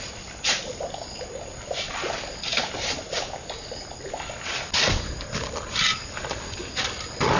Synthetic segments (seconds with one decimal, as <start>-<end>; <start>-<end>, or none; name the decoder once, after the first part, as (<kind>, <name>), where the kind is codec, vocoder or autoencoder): none